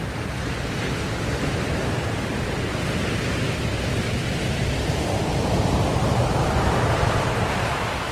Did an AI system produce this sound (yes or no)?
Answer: no